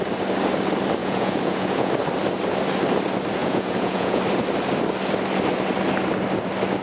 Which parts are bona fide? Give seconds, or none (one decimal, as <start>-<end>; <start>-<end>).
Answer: 0.0-1.0; 1.9-3.4; 4.2-6.8